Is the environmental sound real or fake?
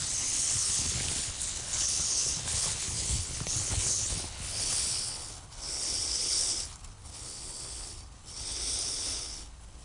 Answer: fake